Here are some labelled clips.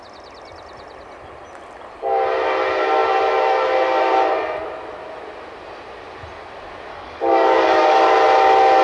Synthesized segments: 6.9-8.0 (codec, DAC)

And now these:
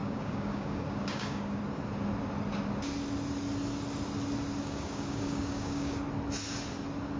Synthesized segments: 0.0-1.6 (codec, DAC); 4.6-6.0